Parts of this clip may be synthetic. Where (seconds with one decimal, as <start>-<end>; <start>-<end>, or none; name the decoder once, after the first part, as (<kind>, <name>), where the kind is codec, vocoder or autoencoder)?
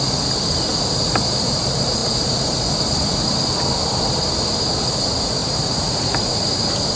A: 3.8-4.4 (vocoder, BigVGAN v2); 5.4-6.4